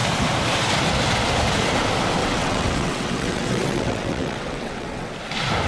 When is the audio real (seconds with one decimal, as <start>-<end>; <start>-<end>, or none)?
0.0-2.2; 5.1-5.7

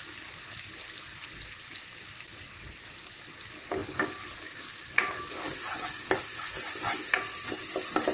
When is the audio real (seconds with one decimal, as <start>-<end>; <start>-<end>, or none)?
0.0-8.1